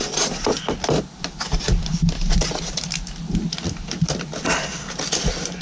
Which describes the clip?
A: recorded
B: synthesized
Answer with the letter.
A